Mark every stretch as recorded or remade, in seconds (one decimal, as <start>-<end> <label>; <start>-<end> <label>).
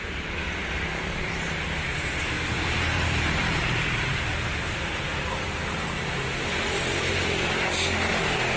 0.0-8.6 remade